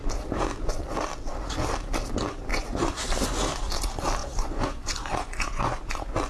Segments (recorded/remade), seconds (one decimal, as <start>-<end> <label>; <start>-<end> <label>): 0.0-2.5 recorded; 2.5-3.1 remade; 3.1-4.2 recorded; 4.2-5.8 remade; 5.8-6.3 recorded